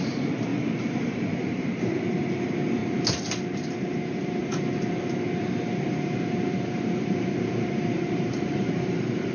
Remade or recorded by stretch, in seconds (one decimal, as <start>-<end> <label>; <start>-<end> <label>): 0.0-2.8 remade; 2.8-3.5 recorded; 3.5-4.4 remade; 4.4-5.4 recorded; 5.4-9.3 remade